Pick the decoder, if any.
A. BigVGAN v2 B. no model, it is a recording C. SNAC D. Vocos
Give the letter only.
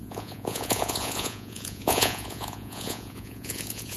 D